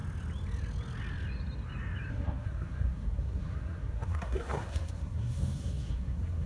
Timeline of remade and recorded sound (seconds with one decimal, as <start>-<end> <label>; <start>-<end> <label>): 0.0-2.1 recorded; 2.1-6.5 remade